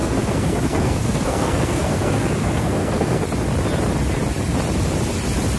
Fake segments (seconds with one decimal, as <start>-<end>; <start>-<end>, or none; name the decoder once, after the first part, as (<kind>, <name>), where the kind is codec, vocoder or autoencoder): 0.0-3.2 (codec, SNAC)